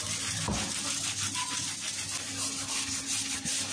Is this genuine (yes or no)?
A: yes